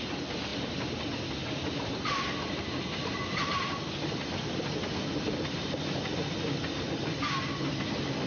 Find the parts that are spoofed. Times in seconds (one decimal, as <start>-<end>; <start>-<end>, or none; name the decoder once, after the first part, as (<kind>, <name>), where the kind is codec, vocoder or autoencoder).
none